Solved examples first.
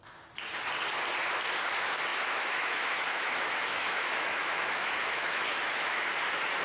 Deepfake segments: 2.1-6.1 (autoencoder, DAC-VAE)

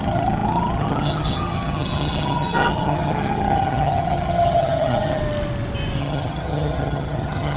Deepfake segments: 0.0-5.2 (vocoder, HiFi-GAN); 6.0-7.6

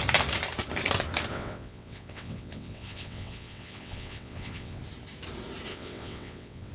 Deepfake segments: 1.3-4.8 (vocoder, WaveNeXt); 5.7-6.7